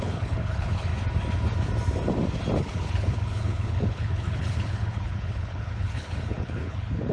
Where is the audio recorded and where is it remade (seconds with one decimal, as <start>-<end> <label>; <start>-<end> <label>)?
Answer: 0.0-0.9 remade; 0.9-2.6 recorded; 2.6-7.1 remade